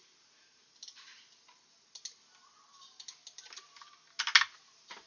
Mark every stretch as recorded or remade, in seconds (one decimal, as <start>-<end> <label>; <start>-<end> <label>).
0.0-5.1 recorded